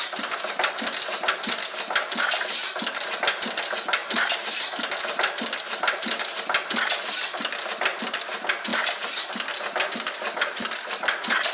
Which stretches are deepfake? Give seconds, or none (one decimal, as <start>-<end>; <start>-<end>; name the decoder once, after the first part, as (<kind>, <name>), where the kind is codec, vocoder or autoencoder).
none